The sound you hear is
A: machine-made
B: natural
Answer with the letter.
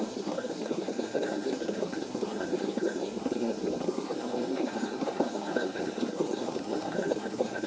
A